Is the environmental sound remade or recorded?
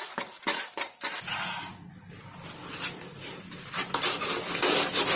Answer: recorded